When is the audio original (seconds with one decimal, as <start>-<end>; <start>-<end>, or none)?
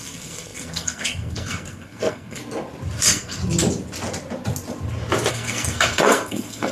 2.4-3.0; 3.4-5.3